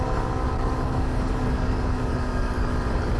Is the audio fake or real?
fake